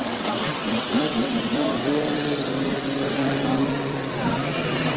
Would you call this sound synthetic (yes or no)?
yes